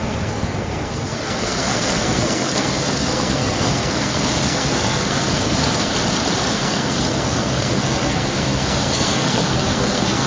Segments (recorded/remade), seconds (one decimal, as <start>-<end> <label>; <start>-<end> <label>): 0.0-5.9 remade; 5.9-6.5 recorded; 6.5-10.3 remade

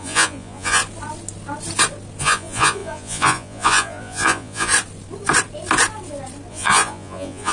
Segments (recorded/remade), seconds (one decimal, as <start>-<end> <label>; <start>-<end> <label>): 0.0-0.8 remade; 0.8-2.2 recorded; 2.2-4.7 remade; 4.7-6.5 recorded; 6.5-7.5 remade

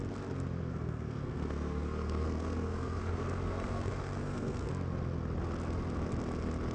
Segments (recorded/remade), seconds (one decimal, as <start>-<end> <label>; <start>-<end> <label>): 0.0-0.7 recorded; 0.7-4.7 remade; 4.7-6.7 recorded

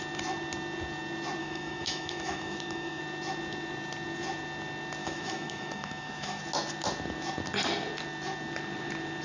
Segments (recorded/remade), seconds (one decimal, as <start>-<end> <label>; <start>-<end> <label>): 0.0-1.4 recorded; 1.4-3.0 remade; 3.0-5.0 recorded; 5.0-6.4 remade; 6.4-9.2 recorded

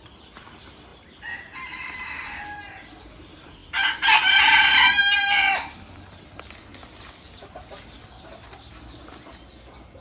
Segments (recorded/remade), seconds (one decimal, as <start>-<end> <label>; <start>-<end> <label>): 0.0-10.0 recorded

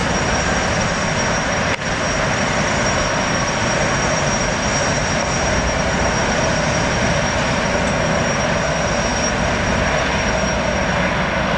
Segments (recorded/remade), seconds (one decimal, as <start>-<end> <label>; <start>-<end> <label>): 0.0-3.4 remade; 3.4-5.0 recorded; 5.0-7.8 remade; 7.8-9.1 recorded; 9.1-10.1 remade; 10.1-11.6 recorded